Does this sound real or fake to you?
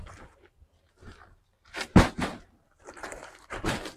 fake